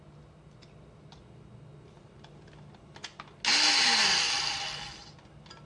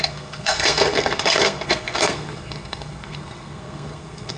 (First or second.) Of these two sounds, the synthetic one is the second